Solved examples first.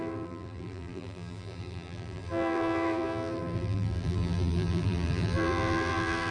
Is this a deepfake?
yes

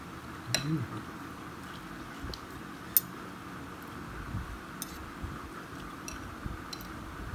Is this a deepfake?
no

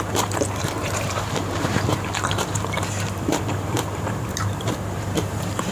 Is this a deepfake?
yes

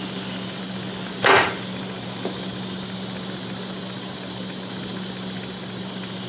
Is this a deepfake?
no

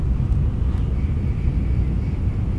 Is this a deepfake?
no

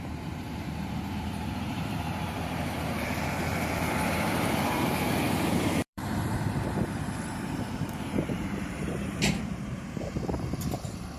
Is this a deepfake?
yes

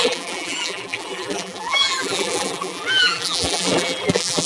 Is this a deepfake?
yes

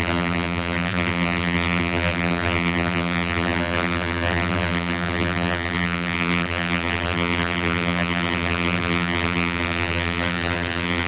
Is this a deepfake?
yes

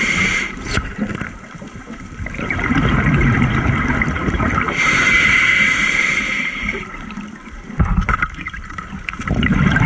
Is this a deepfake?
yes